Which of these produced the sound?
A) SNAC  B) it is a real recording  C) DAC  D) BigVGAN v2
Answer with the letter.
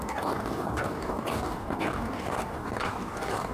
C